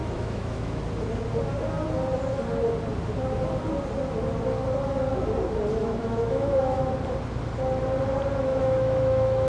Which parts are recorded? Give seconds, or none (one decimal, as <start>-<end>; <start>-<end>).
0.8-5.8; 6.9-8.5